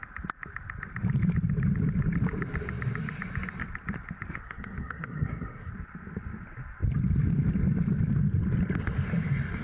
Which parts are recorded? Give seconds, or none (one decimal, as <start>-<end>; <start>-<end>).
0.0-4.4; 5.7-9.6